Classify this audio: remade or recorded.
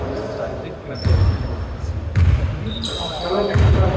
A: recorded